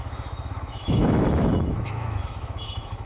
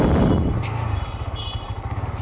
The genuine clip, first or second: second